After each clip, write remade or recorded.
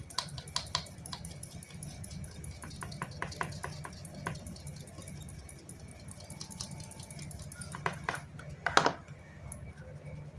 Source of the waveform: recorded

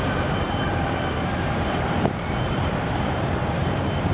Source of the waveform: remade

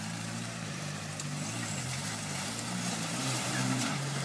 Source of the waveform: remade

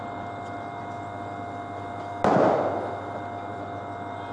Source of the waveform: recorded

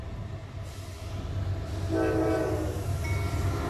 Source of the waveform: recorded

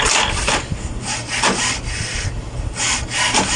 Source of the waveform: recorded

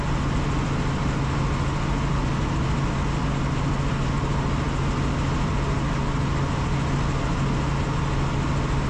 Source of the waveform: recorded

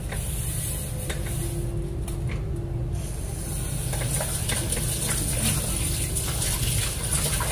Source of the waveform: recorded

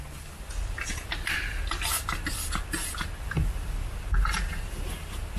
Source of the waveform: recorded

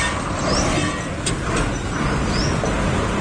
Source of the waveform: recorded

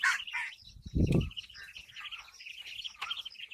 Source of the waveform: remade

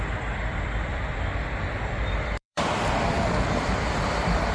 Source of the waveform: remade